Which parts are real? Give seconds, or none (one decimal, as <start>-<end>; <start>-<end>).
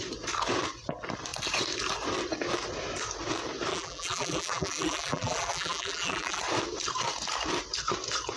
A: 0.0-3.7; 6.4-8.4